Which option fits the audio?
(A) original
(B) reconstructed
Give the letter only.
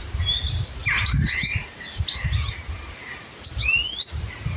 A